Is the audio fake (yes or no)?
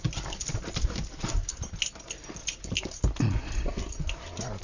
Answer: no